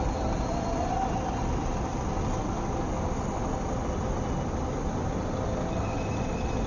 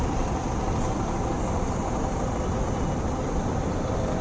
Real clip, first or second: first